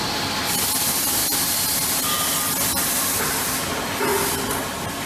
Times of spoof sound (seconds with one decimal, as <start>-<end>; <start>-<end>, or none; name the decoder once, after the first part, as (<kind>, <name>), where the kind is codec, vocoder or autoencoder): none